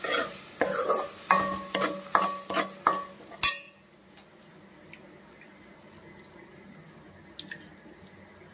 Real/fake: real